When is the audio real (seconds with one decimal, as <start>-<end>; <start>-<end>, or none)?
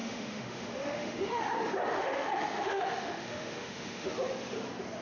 1.4-1.9; 4.1-5.0